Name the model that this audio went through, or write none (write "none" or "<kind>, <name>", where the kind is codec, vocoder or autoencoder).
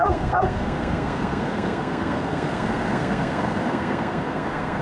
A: codec, SNAC